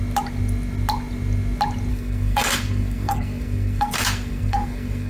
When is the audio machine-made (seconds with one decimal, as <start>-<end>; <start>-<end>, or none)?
1.9-5.1